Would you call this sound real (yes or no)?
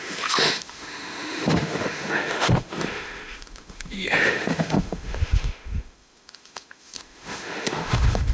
no